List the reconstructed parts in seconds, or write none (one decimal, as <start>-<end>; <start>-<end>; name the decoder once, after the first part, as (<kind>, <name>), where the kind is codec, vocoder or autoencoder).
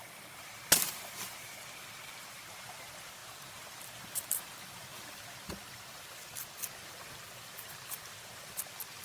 0.0-9.0 (vocoder, BigVGAN v2)